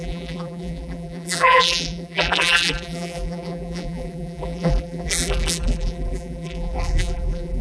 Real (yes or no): no